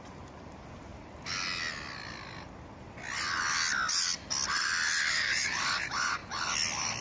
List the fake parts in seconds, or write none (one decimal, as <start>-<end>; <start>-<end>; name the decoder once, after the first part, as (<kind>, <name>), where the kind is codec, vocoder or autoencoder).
0.0-0.9 (vocoder, BigVGAN v2); 5.1-6.2